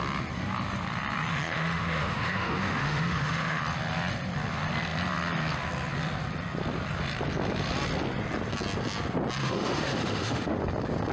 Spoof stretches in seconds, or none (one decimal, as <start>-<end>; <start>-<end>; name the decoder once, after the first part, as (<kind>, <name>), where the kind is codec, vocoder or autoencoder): 1.3-3.6 (autoencoder, DAC-VAE); 9.4-10.6

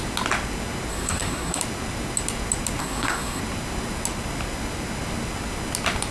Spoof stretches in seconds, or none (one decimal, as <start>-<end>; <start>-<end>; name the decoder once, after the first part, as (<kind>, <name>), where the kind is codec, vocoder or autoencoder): 0.9-1.6 (codec, SNAC); 2.8-3.4

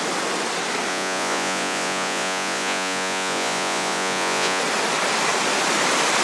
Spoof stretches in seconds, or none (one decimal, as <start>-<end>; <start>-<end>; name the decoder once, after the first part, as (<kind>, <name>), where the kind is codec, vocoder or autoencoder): 0.9-4.6 (vocoder, Vocos)

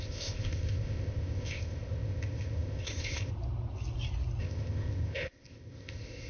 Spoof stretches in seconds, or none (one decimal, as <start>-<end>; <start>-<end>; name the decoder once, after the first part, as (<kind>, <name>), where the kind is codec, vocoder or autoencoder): 0.0-3.3 (codec, ZipCodec); 4.4-6.3

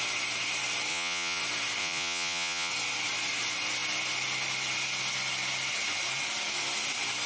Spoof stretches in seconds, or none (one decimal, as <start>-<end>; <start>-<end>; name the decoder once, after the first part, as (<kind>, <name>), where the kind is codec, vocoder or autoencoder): 0.9-1.4 (vocoder, Vocos); 1.8-2.7

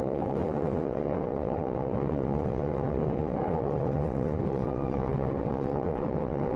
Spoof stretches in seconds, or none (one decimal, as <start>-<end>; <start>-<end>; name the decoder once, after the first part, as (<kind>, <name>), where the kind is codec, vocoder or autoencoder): 0.0-6.6 (vocoder, WaveNeXt)

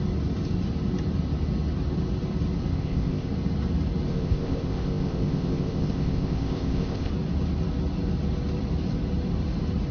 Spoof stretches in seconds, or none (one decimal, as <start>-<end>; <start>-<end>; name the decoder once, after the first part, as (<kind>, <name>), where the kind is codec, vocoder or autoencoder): 2.7-3.3 (codec, ZipCodec); 4.1-7.1

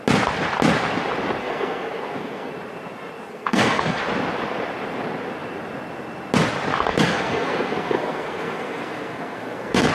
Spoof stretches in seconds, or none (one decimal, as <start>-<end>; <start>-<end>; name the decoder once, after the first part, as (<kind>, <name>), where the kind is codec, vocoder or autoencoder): 1.4-2.5 (codec, SNAC); 3.3-4.0; 6.9-9.9